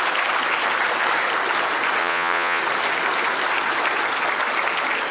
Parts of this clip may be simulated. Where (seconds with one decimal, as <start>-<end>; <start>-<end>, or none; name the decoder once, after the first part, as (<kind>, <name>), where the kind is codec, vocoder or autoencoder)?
2.0-2.6 (vocoder, Vocos)